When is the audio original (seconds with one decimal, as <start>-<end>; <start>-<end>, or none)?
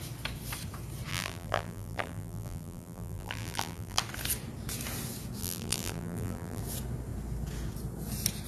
0.0-1.1; 4.0-5.4; 6.6-8.5